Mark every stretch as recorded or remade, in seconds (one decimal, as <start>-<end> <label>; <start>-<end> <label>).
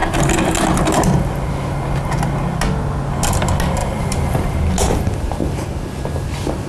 0.0-3.8 recorded; 3.8-4.6 remade; 4.6-6.7 recorded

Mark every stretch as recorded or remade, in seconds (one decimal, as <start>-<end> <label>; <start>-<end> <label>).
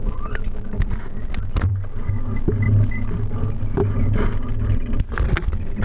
0.0-5.8 recorded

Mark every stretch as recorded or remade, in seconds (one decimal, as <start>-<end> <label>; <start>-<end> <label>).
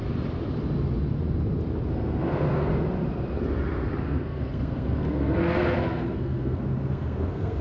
0.0-1.9 recorded; 1.9-2.7 remade; 2.7-4.0 recorded; 4.0-7.6 remade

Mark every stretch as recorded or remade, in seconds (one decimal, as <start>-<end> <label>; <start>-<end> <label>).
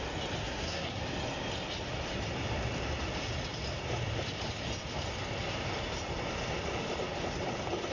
0.0-0.4 recorded; 0.4-1.0 remade; 1.0-7.9 recorded